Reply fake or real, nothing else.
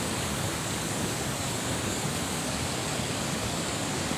fake